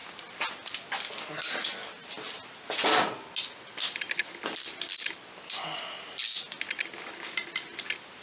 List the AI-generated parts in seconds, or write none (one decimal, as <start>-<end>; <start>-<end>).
none

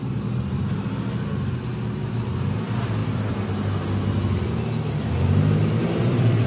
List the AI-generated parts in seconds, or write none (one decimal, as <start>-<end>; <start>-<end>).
3.0-3.5; 5.8-6.5

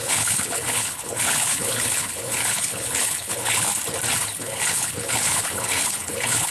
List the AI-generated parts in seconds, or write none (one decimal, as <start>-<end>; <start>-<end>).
0.0-3.7; 4.2-6.5

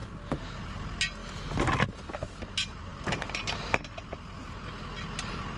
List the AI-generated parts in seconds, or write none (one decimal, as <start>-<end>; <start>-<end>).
none